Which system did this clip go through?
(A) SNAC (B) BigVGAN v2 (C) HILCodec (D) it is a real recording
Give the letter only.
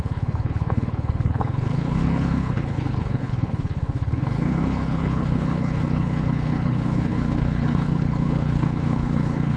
C